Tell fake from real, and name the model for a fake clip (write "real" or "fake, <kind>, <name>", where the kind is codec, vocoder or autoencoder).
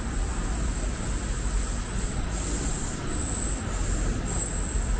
real